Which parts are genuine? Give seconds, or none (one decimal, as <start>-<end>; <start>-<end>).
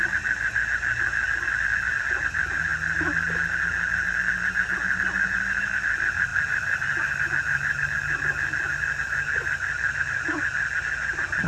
0.0-11.5